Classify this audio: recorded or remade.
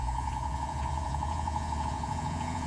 remade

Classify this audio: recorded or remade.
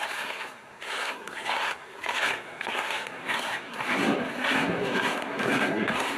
remade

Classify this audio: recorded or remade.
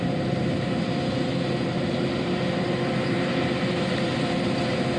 remade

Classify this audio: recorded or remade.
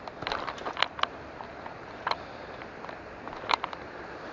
remade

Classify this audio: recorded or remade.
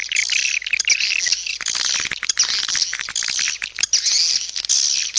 recorded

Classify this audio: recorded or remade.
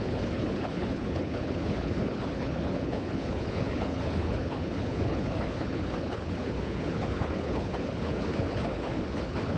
remade